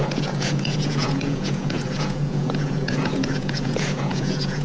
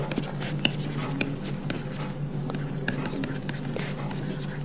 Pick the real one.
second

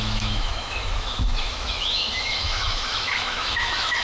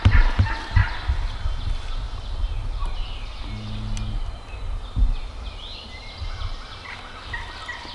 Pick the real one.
second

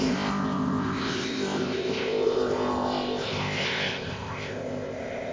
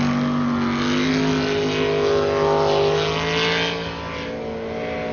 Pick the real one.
second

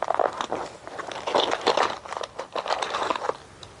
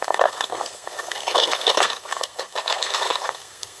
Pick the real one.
first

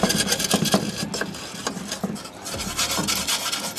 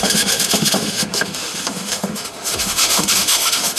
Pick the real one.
first